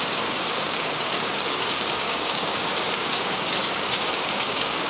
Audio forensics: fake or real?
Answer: fake